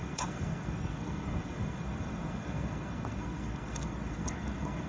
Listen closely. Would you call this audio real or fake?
fake